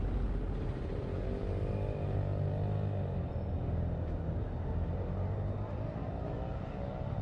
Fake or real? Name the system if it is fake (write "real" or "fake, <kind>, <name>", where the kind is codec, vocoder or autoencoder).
real